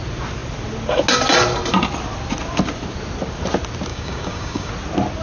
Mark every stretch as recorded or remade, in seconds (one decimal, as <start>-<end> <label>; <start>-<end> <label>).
0.0-3.9 recorded; 3.9-4.7 remade; 4.7-5.2 recorded